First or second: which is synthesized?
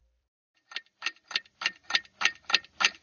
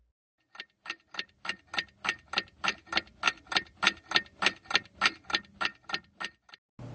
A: first